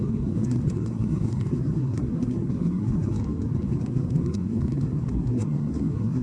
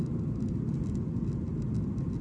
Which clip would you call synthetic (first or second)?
first